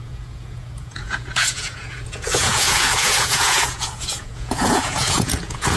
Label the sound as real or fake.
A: fake